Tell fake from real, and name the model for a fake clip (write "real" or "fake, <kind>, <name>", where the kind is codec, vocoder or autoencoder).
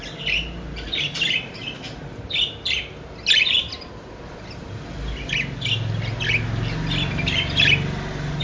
real